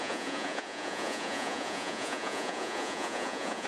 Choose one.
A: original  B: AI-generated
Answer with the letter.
B